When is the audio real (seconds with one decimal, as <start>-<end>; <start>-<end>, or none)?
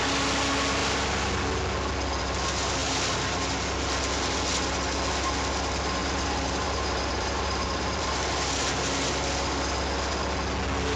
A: 0.0-6.0; 8.1-11.0